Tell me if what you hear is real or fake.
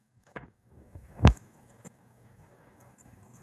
fake